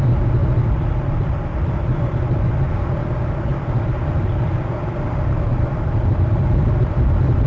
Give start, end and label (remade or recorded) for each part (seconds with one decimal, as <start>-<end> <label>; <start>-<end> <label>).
0.0-0.4 recorded; 0.4-2.9 remade; 2.9-3.5 recorded; 3.5-4.6 remade; 4.6-5.5 recorded; 5.5-7.5 remade